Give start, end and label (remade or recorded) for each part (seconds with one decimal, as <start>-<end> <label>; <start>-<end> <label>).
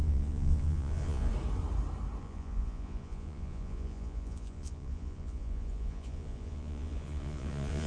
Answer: 0.0-1.3 remade; 1.3-2.2 recorded; 2.2-7.9 remade